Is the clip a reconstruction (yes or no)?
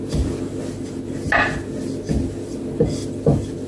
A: no